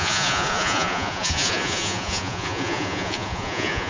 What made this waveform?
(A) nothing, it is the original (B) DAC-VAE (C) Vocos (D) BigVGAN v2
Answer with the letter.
C